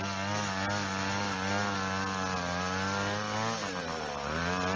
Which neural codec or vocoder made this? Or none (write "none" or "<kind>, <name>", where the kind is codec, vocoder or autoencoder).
none